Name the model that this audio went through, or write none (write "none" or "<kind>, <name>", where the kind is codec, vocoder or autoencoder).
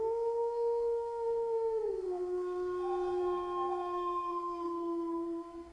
codec, SNAC